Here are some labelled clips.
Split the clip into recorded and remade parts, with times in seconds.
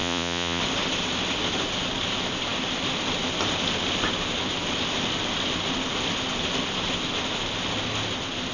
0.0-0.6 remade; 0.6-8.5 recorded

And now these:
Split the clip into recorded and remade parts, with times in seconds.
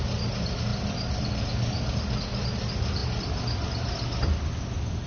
0.0-5.1 recorded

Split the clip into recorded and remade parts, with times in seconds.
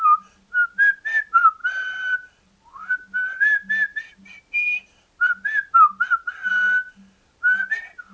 0.0-8.1 recorded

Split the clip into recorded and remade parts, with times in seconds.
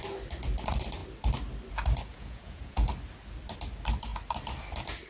0.0-2.1 recorded; 2.1-2.9 remade; 2.9-5.1 recorded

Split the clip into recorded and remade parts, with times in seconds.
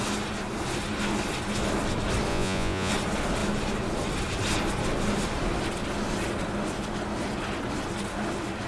0.0-2.3 recorded; 2.3-2.9 remade; 2.9-8.7 recorded